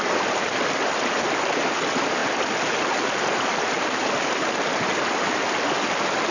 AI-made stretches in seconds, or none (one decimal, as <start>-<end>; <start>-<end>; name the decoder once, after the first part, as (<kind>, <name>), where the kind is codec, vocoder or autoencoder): none